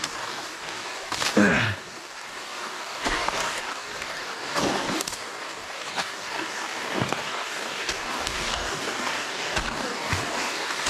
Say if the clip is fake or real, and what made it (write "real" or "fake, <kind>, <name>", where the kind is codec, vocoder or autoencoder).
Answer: fake, codec, DAC